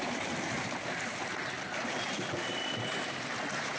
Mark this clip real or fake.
real